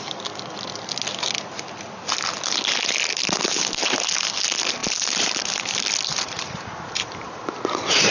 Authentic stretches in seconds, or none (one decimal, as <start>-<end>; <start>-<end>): 0.0-8.1